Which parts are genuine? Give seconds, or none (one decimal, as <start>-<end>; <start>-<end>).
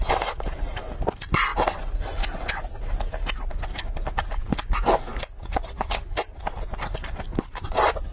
0.0-8.1